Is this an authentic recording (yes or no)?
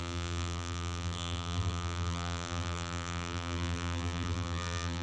no